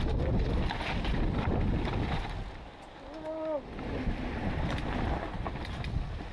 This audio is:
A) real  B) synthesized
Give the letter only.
A